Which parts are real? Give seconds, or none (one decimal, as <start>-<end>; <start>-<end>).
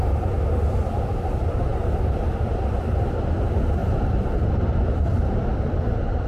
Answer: 0.0-3.8; 4.5-6.3